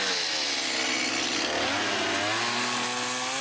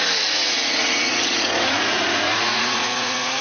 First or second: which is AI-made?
second